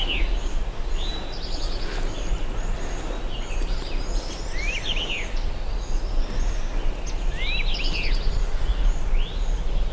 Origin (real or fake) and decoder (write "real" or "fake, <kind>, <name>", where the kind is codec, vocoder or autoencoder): real